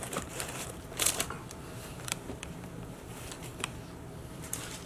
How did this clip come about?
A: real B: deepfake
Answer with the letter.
B